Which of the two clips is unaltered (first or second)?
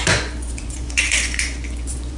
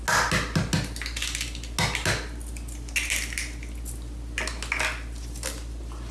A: second